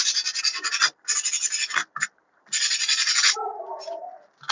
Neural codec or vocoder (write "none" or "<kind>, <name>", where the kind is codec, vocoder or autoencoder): vocoder, BigVGAN v2